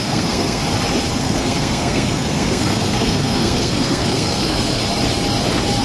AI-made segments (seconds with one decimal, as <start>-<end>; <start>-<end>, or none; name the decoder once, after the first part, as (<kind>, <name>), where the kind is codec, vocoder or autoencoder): 0.0-0.6 (codec, SNAC); 1.2-4.8